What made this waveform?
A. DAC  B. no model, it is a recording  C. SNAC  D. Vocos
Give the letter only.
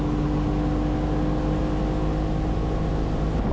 B